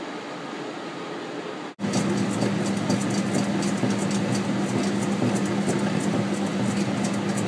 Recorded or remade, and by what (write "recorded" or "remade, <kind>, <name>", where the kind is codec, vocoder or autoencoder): recorded